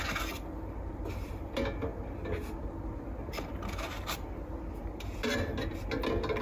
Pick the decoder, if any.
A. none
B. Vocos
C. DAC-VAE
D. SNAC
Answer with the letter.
A